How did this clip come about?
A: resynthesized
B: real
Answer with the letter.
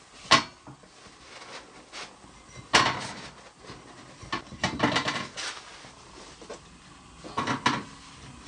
B